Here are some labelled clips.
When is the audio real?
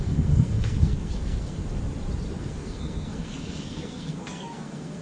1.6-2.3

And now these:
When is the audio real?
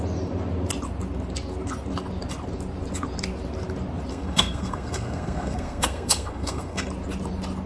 0.0-4.1; 6.9-7.7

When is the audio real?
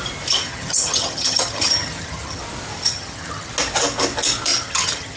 0.0-0.4; 2.4-2.9; 3.5-4.5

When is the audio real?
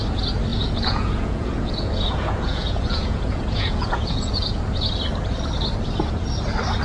0.0-0.5; 4.6-6.8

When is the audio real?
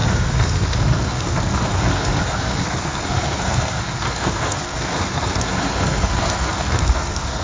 none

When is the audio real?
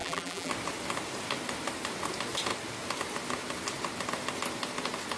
0.5-5.2